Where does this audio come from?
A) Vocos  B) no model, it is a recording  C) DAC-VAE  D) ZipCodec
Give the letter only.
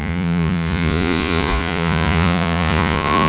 A